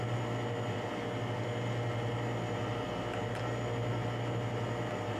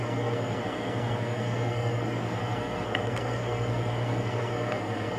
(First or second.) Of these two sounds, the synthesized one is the second